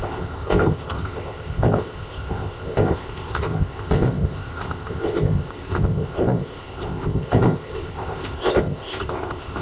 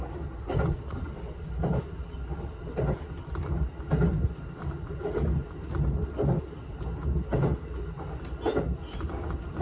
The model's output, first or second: first